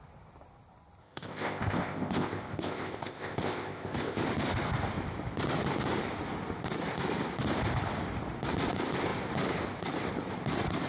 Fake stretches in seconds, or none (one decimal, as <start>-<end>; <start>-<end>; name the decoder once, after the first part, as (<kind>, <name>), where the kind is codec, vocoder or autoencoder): 1.0-4.2 (codec, ZipCodec)